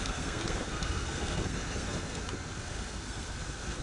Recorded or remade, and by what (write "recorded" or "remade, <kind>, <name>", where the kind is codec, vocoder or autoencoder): remade, codec, SNAC